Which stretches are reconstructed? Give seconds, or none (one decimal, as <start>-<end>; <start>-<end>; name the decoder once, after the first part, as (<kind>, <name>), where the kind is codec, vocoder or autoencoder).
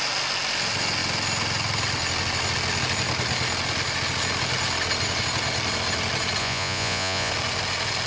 6.4-7.3 (vocoder, Vocos)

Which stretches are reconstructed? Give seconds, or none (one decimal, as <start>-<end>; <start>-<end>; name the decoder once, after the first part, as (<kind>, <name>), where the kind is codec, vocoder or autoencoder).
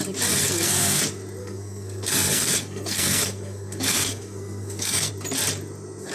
0.4-1.0 (codec, SNAC); 1.4-5.1